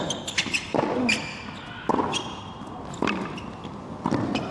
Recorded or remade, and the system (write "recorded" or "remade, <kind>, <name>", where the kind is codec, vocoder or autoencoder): recorded